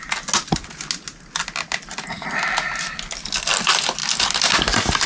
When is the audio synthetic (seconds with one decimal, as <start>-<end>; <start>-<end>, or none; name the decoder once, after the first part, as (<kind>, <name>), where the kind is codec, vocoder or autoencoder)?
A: none